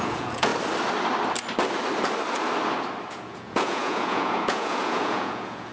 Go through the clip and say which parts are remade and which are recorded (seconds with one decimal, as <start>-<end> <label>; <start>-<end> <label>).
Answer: 0.0-0.5 remade; 0.5-3.1 recorded; 3.1-5.7 remade